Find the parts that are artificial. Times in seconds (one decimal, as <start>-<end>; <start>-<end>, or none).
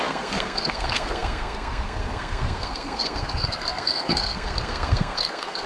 0.0-5.7